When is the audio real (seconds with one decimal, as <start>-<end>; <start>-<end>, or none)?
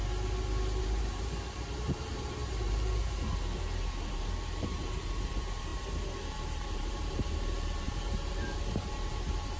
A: 0.0-0.8